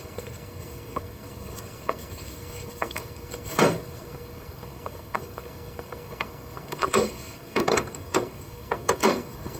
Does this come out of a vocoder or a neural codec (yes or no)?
yes